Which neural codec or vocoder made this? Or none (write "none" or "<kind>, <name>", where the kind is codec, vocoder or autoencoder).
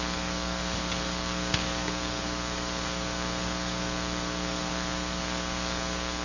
codec, DAC